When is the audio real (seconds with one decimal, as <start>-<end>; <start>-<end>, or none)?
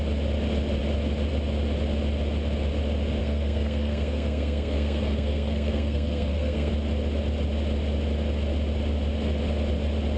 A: 0.0-3.2; 6.7-10.2